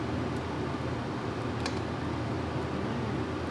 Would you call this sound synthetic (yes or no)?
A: no